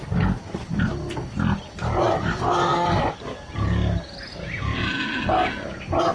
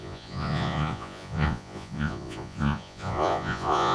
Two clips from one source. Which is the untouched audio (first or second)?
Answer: first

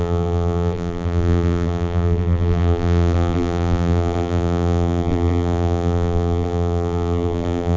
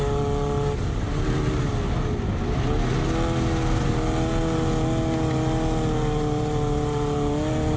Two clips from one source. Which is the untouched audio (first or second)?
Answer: second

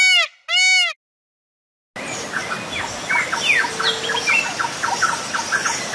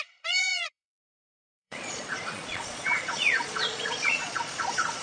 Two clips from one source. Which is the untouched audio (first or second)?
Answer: first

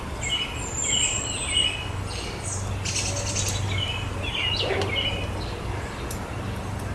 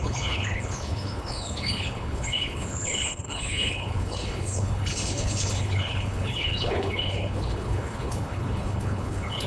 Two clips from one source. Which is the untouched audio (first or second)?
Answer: first